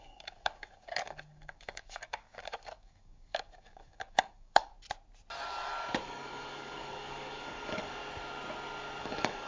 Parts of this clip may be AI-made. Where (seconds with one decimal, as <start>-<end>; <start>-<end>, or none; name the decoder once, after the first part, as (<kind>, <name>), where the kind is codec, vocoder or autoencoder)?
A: 0.0-4.7 (codec, DAC); 6.0-8.0; 9.0-9.5